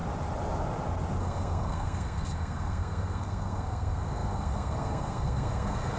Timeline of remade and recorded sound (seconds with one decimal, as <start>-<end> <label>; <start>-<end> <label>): 0.0-1.2 recorded; 1.2-6.0 remade

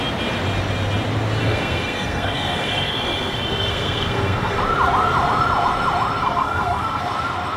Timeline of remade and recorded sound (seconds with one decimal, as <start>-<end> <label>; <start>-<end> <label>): 0.0-1.4 recorded; 1.4-4.6 remade; 4.6-6.2 recorded; 6.2-7.0 remade; 7.0-7.6 recorded

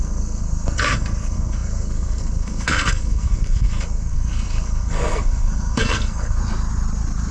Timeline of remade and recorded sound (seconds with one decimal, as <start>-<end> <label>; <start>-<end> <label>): 0.0-6.4 remade; 6.4-7.3 recorded

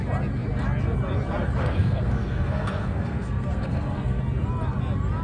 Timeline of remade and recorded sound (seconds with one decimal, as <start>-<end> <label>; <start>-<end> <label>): 0.0-1.6 recorded; 1.6-4.2 remade; 4.2-5.2 recorded

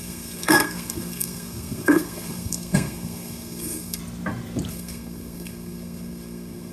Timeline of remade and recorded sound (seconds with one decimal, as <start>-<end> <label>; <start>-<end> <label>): 0.0-4.0 remade; 4.0-4.7 recorded; 4.7-6.7 remade

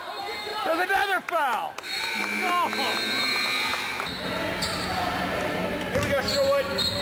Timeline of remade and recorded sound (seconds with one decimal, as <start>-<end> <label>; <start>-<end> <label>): 0.0-7.0 recorded

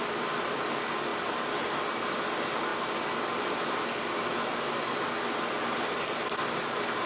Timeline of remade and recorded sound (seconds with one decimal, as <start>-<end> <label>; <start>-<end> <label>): 0.0-7.1 recorded